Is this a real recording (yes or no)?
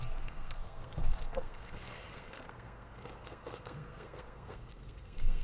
no